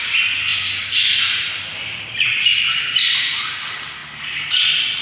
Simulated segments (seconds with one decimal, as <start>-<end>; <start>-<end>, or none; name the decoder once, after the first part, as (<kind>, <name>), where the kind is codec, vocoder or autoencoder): 0.5-1.5 (vocoder, BigVGAN v2); 2.5-3.1